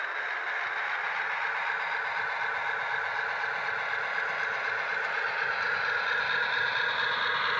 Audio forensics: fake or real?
real